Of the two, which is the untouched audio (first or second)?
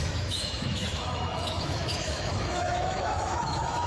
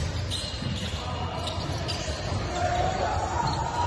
second